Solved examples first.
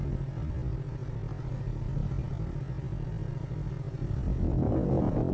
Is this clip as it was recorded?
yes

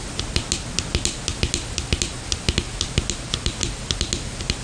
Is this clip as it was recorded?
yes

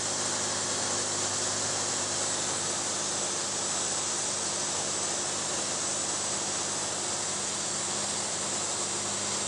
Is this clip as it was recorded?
no